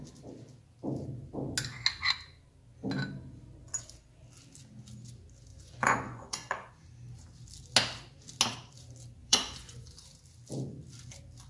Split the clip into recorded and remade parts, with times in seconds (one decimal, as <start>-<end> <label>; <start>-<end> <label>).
0.0-5.5 recorded; 5.5-6.7 remade; 6.7-9.2 recorded; 9.2-9.9 remade; 9.9-11.5 recorded